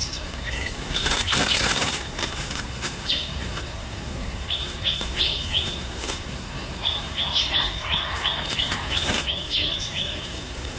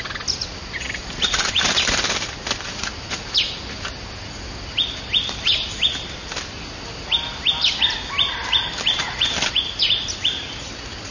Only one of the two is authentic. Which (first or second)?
second